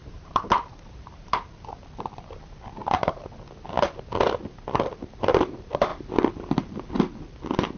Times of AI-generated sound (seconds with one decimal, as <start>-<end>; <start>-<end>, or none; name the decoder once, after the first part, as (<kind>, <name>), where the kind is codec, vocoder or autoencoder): 0.0-1.5 (vocoder, BigVGAN v2)